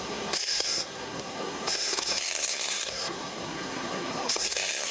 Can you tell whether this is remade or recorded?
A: remade